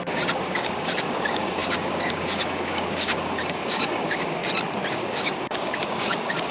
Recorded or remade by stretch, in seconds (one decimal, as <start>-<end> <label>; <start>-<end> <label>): 0.0-4.4 remade; 4.4-4.9 recorded; 4.9-6.5 remade